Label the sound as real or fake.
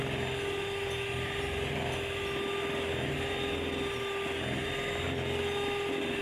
real